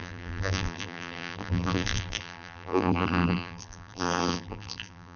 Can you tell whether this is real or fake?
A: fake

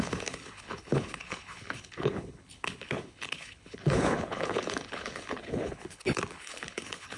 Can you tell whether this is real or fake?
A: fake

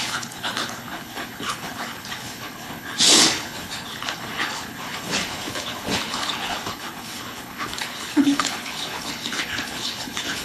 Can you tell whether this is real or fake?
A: fake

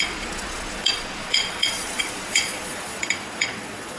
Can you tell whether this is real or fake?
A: fake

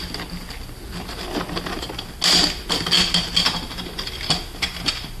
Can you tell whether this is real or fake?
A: real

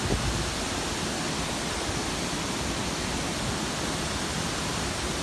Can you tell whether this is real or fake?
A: real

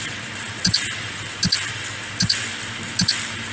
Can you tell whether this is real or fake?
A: real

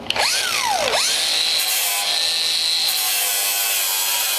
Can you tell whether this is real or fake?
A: real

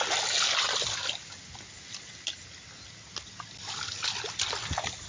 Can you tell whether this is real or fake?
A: real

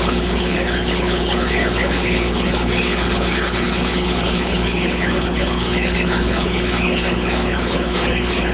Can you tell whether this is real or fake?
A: fake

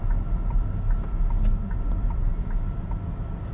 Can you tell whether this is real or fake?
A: real